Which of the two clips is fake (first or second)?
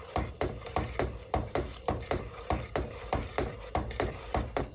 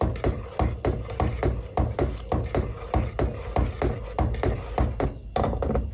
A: first